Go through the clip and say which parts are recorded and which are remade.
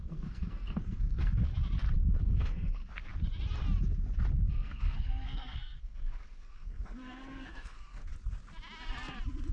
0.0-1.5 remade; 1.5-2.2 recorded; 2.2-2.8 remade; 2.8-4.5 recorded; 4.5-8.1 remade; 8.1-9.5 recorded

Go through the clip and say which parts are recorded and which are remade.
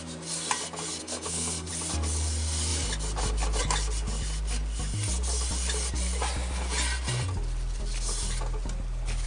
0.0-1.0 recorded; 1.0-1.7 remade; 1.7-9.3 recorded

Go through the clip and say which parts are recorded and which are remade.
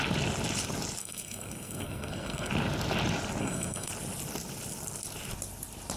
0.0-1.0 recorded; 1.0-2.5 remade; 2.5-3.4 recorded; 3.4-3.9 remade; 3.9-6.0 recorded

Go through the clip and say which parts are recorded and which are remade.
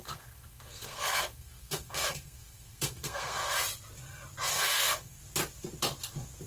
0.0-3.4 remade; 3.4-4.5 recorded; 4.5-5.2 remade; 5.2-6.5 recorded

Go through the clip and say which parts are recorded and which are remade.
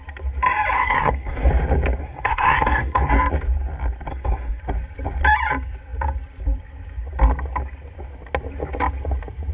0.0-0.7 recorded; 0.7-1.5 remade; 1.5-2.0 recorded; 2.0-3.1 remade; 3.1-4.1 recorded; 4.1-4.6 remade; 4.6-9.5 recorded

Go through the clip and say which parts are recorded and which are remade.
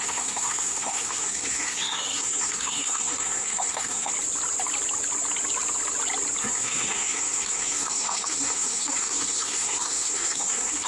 0.0-4.1 remade; 4.1-6.4 recorded; 6.4-10.9 remade